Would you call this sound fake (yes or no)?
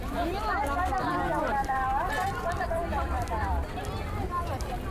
yes